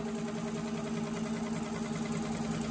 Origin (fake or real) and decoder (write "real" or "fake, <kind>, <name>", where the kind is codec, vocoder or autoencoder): real